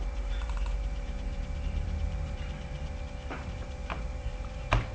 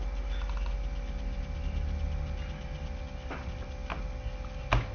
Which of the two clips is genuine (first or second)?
second